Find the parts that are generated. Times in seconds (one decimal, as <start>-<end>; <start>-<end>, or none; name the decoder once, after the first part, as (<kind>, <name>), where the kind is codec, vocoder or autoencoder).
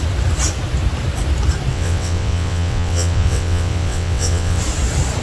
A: 1.7-4.6 (vocoder, WaveNeXt)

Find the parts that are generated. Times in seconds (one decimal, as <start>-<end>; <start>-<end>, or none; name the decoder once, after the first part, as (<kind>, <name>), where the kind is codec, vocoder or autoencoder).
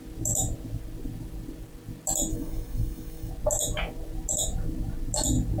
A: 2.3-3.3 (codec, DAC)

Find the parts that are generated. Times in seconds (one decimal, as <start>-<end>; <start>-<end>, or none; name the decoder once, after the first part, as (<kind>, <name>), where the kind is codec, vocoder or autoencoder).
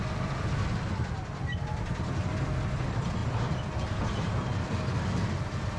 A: 3.2-5.0 (vocoder, BigVGAN v2)